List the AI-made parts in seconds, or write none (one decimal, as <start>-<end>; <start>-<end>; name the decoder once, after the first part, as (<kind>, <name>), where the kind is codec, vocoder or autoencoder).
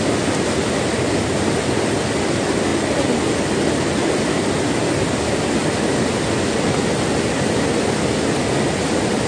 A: none